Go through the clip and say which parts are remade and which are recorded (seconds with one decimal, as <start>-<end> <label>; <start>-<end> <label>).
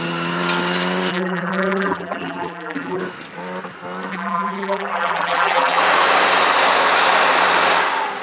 0.0-1.1 recorded; 1.1-3.0 remade; 3.0-4.1 recorded; 4.1-5.8 remade; 5.8-8.2 recorded